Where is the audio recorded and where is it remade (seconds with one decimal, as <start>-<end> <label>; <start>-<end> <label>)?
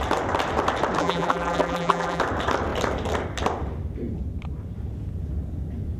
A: 0.0-1.0 recorded; 1.0-2.2 remade; 2.2-6.0 recorded